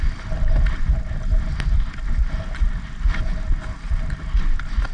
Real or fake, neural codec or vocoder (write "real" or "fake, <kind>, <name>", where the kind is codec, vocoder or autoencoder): real